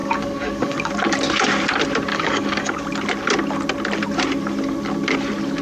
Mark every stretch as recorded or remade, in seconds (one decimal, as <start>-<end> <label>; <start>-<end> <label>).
0.0-0.9 remade; 0.9-2.1 recorded; 2.1-2.8 remade; 2.8-5.6 recorded